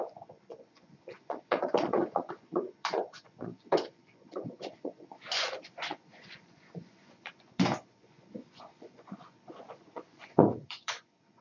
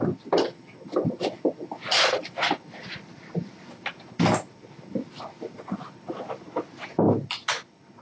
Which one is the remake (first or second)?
first